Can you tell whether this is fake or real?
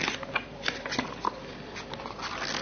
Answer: real